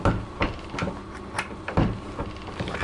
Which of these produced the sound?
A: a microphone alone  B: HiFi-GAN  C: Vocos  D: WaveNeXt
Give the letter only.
A